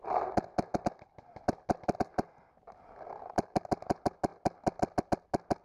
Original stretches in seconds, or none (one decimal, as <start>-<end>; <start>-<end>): 0.0-5.6